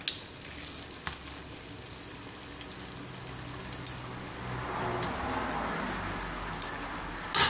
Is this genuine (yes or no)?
yes